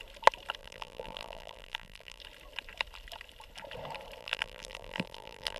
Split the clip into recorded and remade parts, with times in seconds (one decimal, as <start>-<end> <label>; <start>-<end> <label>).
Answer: 0.0-0.6 recorded; 0.6-2.2 remade; 2.2-4.2 recorded; 4.2-5.6 remade